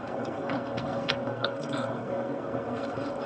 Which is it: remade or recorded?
remade